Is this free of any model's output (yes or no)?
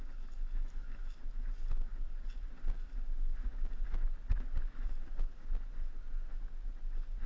yes